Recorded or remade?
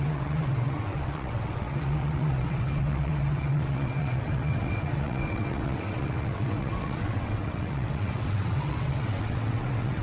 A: remade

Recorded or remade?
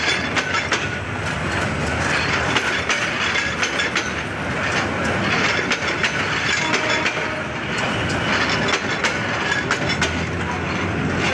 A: recorded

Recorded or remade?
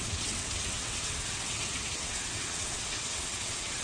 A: remade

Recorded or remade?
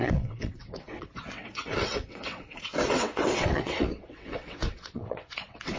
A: remade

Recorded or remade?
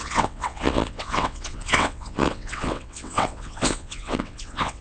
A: remade